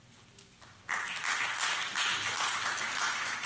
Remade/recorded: recorded